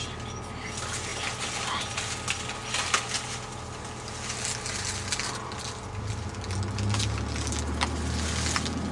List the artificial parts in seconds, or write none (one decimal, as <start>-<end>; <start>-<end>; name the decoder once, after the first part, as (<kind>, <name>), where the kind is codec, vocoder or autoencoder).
none

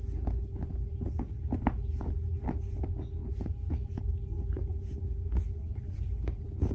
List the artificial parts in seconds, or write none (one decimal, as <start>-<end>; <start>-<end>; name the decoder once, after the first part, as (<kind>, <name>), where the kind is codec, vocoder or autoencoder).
none

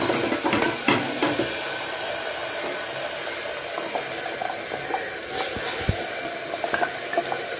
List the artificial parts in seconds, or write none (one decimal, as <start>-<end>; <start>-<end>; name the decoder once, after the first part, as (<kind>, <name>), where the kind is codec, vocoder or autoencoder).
none

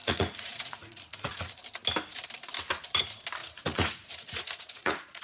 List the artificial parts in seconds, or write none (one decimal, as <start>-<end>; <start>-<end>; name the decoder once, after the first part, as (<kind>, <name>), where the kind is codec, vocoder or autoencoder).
0.0-1.6 (vocoder, Vocos); 3.4-5.2